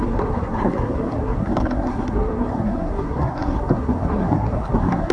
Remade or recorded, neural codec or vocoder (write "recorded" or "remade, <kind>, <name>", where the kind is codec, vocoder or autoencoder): remade, codec, SNAC